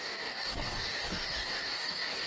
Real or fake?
fake